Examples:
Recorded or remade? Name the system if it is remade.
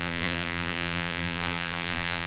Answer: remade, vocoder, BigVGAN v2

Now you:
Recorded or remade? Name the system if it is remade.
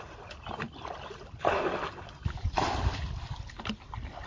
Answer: recorded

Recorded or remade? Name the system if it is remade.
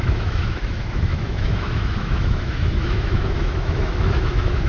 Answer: remade, autoencoder, DAC-VAE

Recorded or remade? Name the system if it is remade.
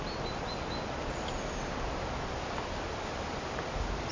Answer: recorded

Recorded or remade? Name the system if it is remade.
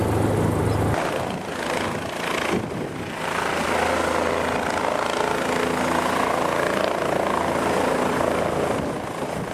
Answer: recorded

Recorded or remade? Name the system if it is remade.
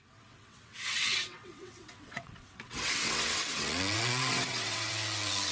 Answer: remade, vocoder, WaveNeXt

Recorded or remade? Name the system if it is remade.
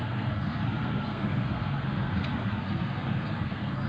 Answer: remade, codec, SNAC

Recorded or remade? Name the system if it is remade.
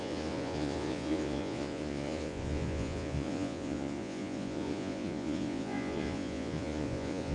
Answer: remade, vocoder, Vocos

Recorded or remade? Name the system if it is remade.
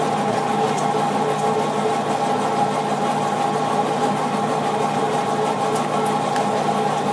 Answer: recorded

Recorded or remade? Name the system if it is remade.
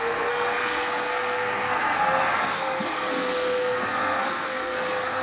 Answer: remade, codec, SNAC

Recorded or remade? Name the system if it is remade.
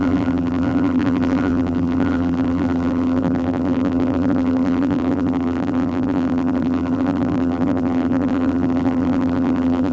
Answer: remade, vocoder, BigVGAN v2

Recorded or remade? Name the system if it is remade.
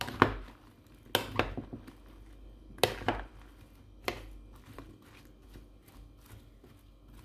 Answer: recorded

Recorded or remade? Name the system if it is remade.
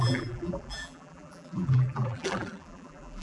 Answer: remade, vocoder, BigVGAN v2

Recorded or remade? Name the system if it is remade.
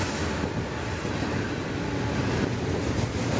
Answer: recorded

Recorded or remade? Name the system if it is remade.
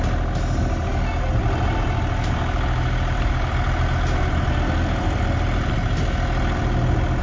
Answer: recorded